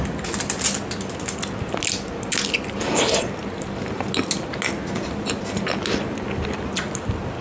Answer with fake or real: real